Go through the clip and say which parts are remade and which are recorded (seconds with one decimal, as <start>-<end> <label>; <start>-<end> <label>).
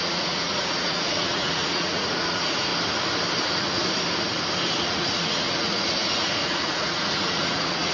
0.0-2.7 remade; 2.7-3.4 recorded; 3.4-3.8 remade; 3.8-4.8 recorded; 4.8-7.9 remade